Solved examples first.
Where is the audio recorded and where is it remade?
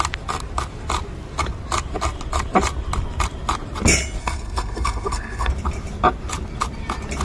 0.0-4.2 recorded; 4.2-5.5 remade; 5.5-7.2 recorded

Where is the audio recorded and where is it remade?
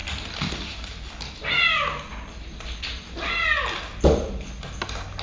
0.0-5.2 recorded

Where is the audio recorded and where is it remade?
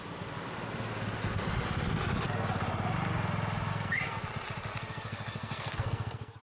0.0-3.7 recorded; 3.7-4.2 remade; 4.2-4.7 recorded; 4.7-6.4 remade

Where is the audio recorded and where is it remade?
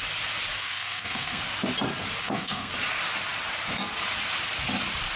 0.0-0.6 recorded; 0.6-1.4 remade; 1.4-2.2 recorded; 2.2-2.7 remade; 2.7-5.2 recorded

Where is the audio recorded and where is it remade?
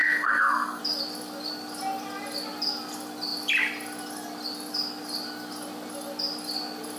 0.0-0.8 remade; 0.8-7.0 recorded